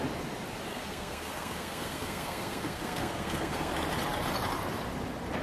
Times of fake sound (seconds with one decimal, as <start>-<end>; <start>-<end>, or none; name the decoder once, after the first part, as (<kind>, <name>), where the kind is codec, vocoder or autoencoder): 0.7-3.7 (codec, SNAC)